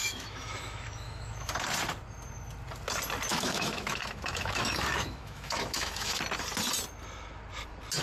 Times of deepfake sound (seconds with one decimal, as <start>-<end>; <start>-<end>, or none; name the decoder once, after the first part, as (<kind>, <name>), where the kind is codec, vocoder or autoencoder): 0.0-1.7 (autoencoder, DAC-VAE); 3.3-6.2